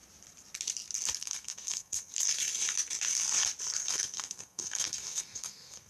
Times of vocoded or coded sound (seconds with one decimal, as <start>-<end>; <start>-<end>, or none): 1.2-2.1; 3.8-5.9